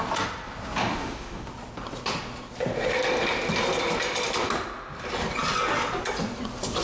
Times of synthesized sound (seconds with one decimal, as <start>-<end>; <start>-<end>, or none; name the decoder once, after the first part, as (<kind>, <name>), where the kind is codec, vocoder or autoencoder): 0.8-1.5 (autoencoder, DAC-VAE)